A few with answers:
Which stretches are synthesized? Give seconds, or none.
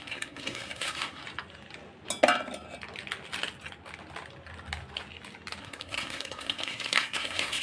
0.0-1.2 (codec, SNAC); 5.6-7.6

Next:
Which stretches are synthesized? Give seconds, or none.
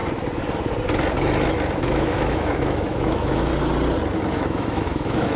1.8-3.5 (autoencoder, DAC-VAE); 4.3-5.4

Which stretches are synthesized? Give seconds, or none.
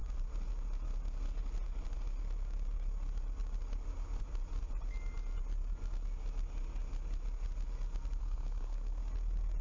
8.2-9.0 (codec, SNAC)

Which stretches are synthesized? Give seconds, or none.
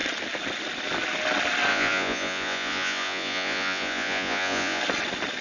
1.7-4.8 (vocoder, Vocos)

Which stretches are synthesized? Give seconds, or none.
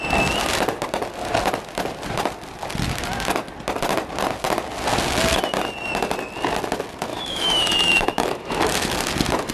7.1-9.1 (autoencoder, DAC-VAE)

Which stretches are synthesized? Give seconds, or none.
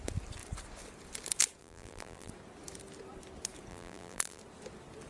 1.6-2.3 (vocoder, BigVGAN v2); 3.7-4.4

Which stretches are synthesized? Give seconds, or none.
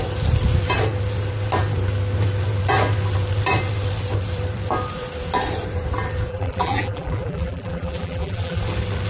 6.3-8.6 (vocoder, BigVGAN v2)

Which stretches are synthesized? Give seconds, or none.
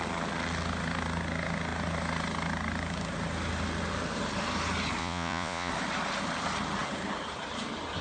5.0-5.7 (vocoder, Vocos)